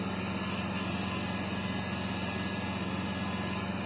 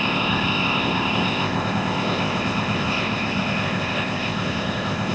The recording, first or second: first